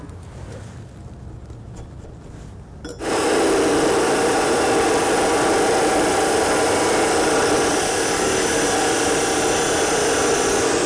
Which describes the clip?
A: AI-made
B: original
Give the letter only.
B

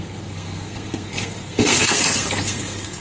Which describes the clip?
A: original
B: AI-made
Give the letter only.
B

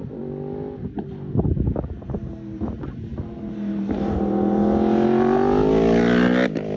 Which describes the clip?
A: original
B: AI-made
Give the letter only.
A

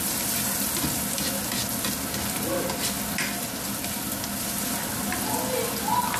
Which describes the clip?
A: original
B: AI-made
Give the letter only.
A